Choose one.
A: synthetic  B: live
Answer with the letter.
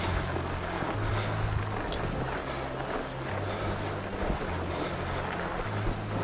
B